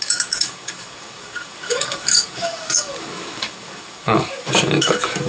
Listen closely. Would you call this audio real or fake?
fake